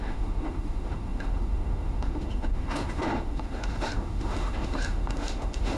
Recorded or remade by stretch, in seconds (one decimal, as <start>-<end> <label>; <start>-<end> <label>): 0.0-5.8 remade